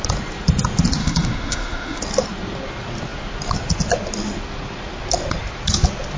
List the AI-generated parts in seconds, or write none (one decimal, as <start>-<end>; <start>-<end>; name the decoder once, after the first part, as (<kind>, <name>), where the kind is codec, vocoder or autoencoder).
1.0-2.0 (autoencoder, DAC-VAE)